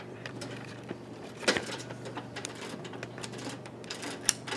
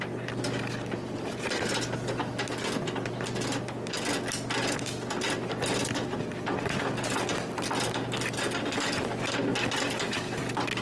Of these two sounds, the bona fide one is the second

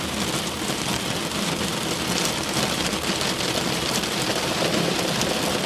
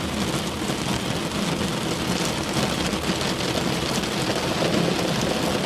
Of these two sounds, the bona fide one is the second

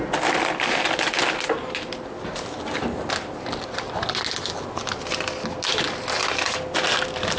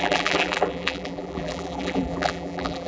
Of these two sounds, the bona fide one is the first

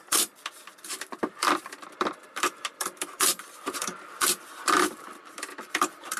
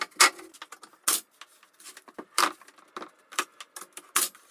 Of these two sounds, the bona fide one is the second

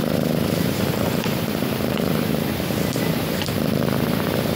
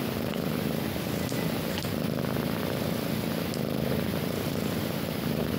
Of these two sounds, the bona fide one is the second